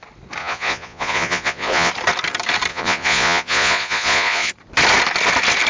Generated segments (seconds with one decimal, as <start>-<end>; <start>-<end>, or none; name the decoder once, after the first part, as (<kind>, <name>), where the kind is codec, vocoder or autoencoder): 0.4-1.9 (vocoder, Vocos); 2.7-4.5